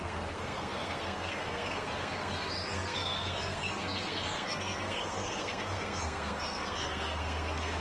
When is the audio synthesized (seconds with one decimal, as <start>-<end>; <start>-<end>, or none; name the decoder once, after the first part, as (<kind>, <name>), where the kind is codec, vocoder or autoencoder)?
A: 0.0-7.8 (codec, SNAC)